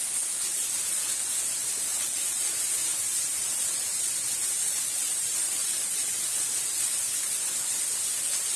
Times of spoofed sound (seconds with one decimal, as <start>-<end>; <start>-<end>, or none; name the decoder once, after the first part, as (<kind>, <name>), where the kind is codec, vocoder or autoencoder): 1.9-4.0 (vocoder, BigVGAN v2); 4.4-7.3